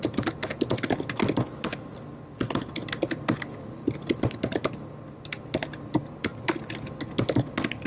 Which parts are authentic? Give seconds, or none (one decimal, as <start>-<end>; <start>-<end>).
0.0-7.9